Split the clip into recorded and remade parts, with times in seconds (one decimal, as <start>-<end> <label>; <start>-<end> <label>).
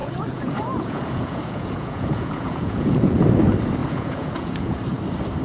0.0-3.2 remade; 3.2-3.8 recorded; 3.8-4.8 remade; 4.8-5.4 recorded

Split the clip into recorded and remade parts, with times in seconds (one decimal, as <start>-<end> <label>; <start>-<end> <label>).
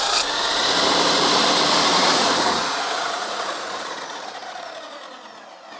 0.0-1.9 recorded; 1.9-5.8 remade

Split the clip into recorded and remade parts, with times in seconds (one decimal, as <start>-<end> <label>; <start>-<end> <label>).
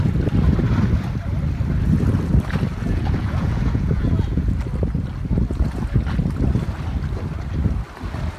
0.0-2.7 recorded; 2.7-4.5 remade; 4.5-8.4 recorded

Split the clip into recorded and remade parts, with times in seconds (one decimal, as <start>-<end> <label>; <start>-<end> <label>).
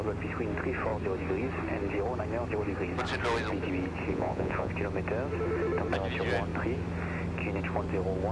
0.0-4.1 recorded; 4.1-4.7 remade; 4.7-8.3 recorded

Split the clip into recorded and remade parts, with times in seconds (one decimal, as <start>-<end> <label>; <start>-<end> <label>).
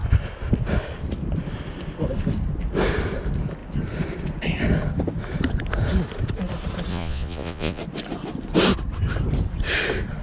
0.0-6.9 recorded; 6.9-7.8 remade; 7.8-10.2 recorded